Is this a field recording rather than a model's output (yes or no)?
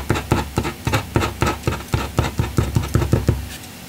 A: yes